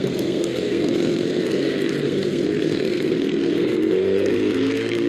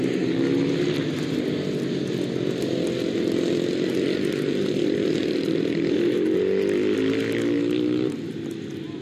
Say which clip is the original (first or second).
second